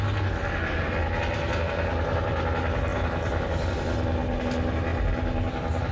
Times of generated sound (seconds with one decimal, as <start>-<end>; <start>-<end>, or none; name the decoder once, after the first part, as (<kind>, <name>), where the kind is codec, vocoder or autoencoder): none